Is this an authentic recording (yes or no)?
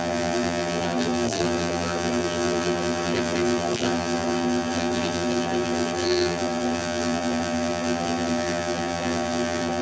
no